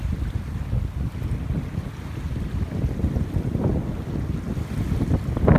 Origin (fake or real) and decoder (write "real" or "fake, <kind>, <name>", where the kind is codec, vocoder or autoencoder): real